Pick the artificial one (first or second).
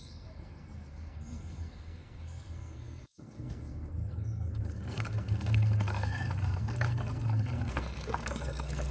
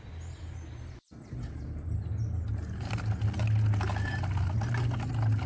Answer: first